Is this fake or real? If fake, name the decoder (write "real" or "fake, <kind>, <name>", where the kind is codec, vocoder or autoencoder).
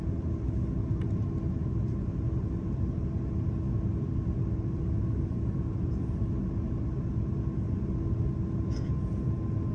real